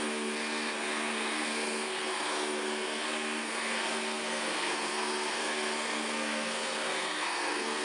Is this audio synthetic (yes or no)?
yes